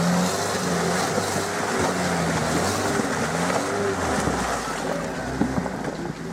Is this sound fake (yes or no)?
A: no